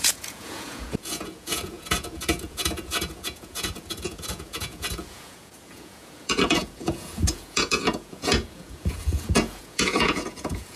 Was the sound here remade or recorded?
remade